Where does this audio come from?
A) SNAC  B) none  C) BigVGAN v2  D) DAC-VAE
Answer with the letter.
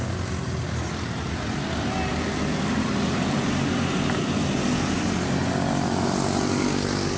B